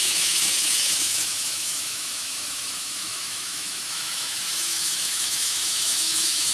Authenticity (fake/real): fake